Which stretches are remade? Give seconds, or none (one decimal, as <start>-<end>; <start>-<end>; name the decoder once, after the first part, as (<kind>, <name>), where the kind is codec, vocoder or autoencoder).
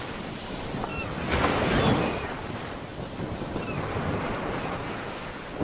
none